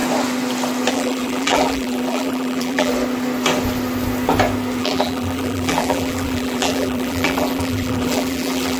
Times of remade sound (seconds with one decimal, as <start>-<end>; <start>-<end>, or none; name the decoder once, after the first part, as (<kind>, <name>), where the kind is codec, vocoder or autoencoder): 0.9-2.9 (vocoder, BigVGAN v2); 4.8-8.8